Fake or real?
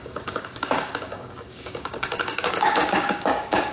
fake